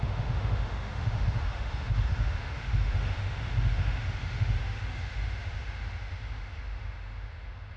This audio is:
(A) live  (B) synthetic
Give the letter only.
B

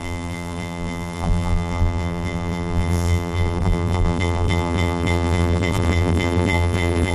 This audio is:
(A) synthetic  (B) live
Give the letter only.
A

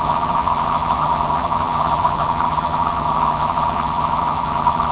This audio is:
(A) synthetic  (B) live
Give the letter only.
A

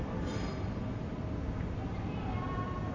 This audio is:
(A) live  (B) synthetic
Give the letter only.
A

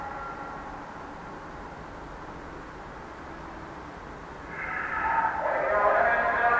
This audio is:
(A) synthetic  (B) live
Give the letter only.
B